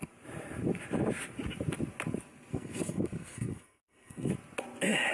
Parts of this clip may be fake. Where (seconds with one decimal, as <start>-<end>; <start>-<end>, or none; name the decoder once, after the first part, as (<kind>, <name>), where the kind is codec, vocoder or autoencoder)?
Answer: 2.5-4.3 (codec, SNAC)